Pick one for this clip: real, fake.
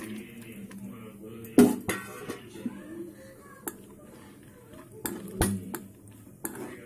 real